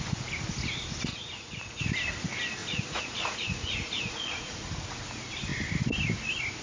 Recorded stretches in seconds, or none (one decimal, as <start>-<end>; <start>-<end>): 0.0-1.1; 1.8-2.6; 4.7-6.6